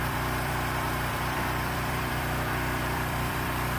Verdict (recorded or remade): remade